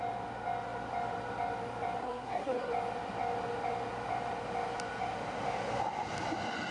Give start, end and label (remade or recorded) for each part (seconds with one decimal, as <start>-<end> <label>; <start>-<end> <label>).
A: 0.0-2.0 recorded; 2.0-2.7 remade; 2.7-6.7 recorded